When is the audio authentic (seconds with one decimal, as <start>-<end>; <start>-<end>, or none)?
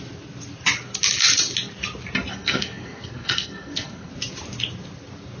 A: 0.0-2.3; 4.1-5.4